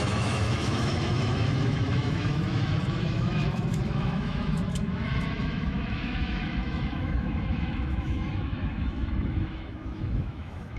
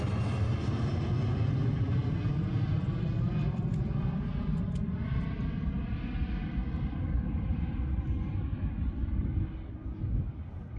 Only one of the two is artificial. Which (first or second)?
first